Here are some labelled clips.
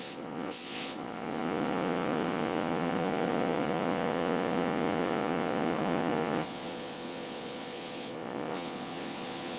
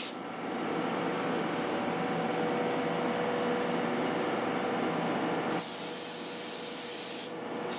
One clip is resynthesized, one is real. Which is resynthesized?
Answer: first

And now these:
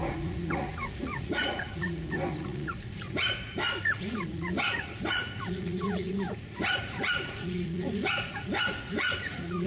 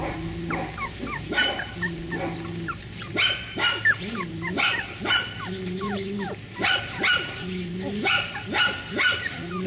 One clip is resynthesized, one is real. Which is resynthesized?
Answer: first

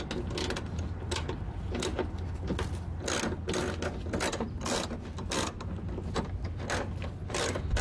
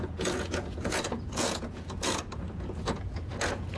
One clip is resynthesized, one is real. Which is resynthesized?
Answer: second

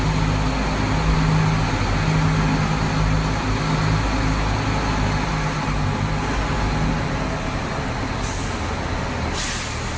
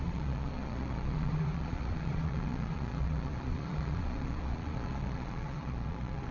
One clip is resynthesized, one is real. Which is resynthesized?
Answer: second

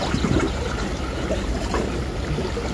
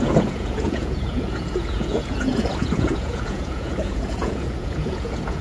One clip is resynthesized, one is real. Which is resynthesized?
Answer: second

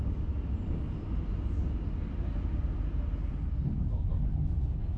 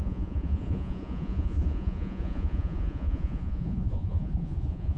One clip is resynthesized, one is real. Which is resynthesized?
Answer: second